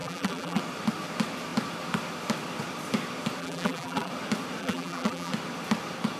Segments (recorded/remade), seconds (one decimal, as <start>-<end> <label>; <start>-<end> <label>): 0.0-0.6 remade; 0.6-3.4 recorded; 3.4-4.1 remade; 4.1-4.6 recorded; 4.6-5.3 remade; 5.3-6.2 recorded